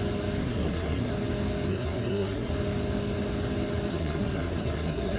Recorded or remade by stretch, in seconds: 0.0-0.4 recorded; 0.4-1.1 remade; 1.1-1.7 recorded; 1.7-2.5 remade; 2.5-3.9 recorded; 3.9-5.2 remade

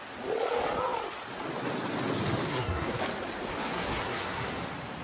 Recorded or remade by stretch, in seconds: 0.0-2.5 recorded; 2.5-3.0 remade; 3.0-3.6 recorded; 3.6-4.5 remade; 4.5-5.0 recorded

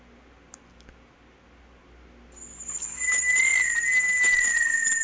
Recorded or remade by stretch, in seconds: 0.0-5.0 recorded

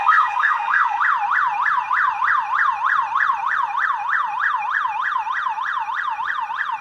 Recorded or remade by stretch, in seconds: 0.0-1.0 remade; 1.0-6.8 recorded

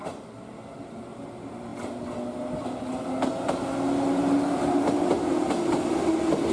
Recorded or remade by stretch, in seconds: 0.0-6.5 recorded